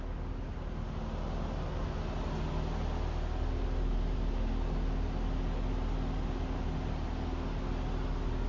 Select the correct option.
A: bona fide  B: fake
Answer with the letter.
A